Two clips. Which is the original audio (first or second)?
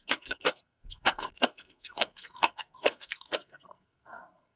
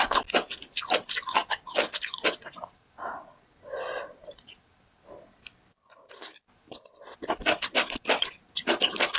second